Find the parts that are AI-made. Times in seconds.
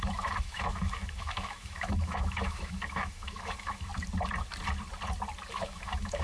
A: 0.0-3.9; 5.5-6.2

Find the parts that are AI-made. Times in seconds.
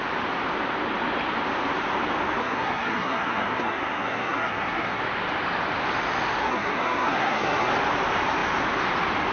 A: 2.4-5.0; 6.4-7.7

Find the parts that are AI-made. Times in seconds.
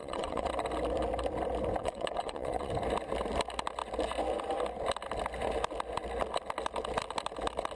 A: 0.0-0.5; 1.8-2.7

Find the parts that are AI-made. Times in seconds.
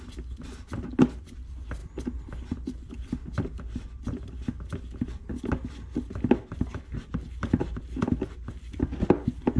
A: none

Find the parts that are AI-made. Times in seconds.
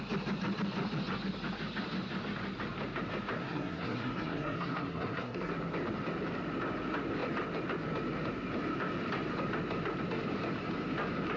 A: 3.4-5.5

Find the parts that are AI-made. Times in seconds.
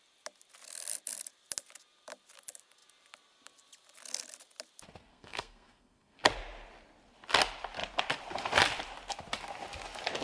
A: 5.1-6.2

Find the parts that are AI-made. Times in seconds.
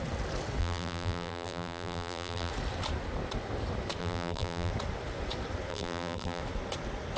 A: 0.6-2.5; 4.0-4.7; 5.7-6.4